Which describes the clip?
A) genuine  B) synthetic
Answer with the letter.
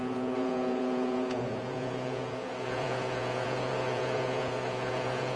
B